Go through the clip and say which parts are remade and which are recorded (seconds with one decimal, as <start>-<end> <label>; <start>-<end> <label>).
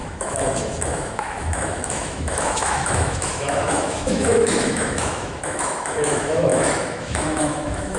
0.0-8.0 remade